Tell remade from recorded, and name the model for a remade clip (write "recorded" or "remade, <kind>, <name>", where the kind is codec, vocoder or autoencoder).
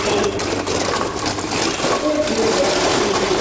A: remade, vocoder, BigVGAN v2